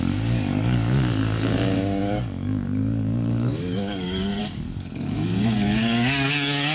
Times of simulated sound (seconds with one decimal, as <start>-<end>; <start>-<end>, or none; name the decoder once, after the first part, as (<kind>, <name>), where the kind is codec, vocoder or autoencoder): 0.0-6.7 (codec, DAC)